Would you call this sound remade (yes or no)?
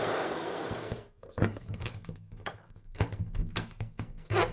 yes